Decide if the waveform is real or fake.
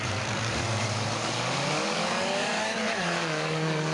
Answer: fake